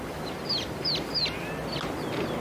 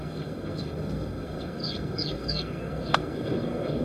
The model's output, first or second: second